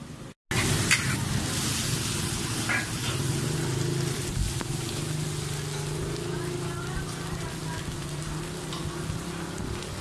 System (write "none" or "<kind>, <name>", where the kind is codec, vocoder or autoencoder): none